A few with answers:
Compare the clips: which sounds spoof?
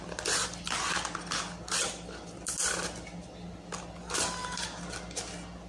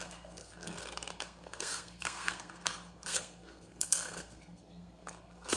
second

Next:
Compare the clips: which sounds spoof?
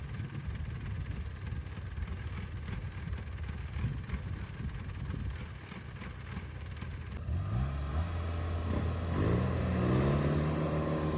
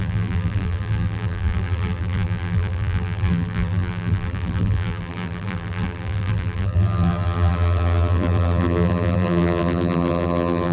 second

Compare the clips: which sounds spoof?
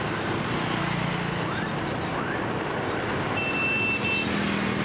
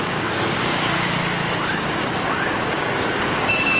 second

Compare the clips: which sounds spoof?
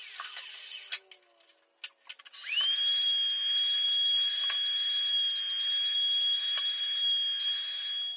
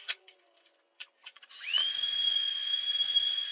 second